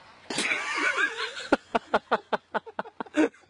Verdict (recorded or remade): remade